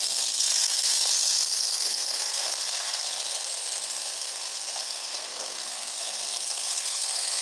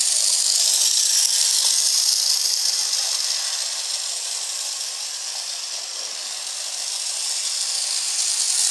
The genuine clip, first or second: second